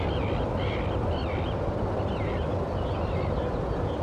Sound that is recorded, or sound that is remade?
recorded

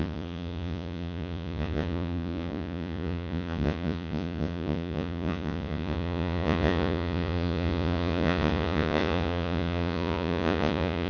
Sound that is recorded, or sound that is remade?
remade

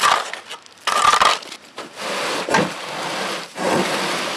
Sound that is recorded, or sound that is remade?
recorded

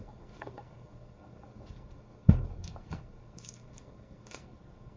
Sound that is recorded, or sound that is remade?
remade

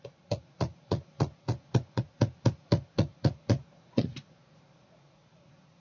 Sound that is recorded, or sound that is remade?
remade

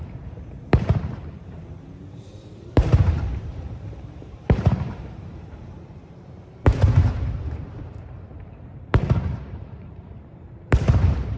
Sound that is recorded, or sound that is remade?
remade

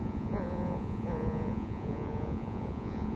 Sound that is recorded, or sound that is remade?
remade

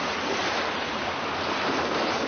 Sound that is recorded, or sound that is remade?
remade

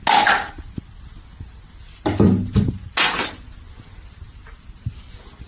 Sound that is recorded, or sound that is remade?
recorded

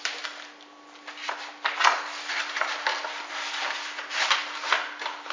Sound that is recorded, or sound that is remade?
recorded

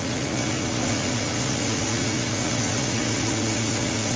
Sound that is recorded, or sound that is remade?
remade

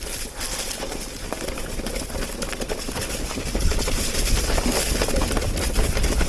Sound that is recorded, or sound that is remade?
recorded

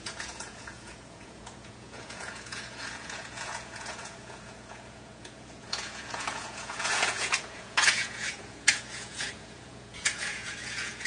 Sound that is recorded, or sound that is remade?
remade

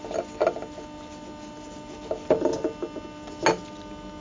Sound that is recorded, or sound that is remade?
recorded